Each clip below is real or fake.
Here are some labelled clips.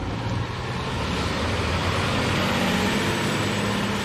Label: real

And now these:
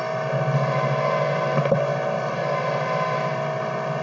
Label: real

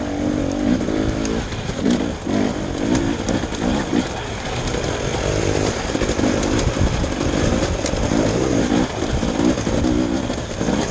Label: real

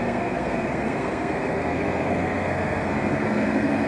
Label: fake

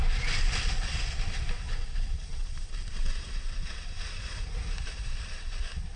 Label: real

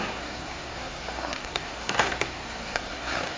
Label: fake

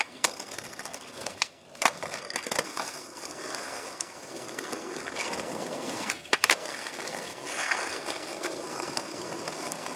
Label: fake